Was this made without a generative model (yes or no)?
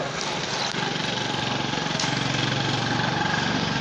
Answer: yes